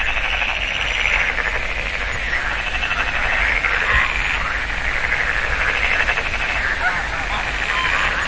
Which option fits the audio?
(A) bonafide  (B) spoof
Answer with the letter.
A